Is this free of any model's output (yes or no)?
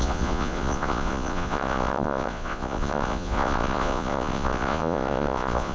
no